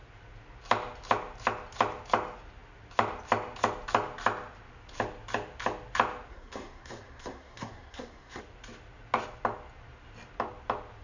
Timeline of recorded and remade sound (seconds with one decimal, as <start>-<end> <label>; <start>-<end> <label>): 0.0-6.3 recorded; 6.3-8.4 remade; 8.4-11.0 recorded